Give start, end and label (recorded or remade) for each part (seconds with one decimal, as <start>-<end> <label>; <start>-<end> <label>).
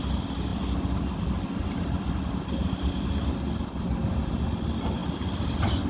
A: 0.0-0.5 recorded; 0.5-2.9 remade; 2.9-5.0 recorded; 5.0-5.9 remade